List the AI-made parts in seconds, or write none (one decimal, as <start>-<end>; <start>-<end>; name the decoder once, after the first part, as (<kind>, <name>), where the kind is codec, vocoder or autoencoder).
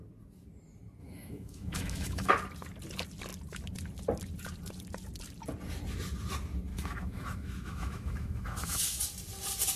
1.0-2.3 (autoencoder, DAC-VAE); 6.7-9.0